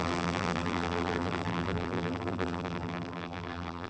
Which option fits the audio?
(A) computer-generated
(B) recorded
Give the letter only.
A